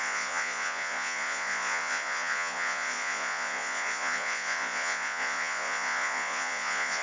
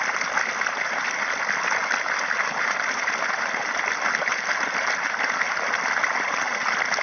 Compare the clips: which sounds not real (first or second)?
first